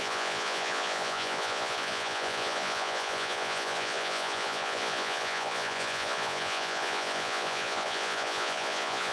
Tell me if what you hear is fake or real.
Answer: fake